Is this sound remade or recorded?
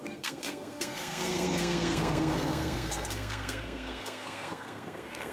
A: remade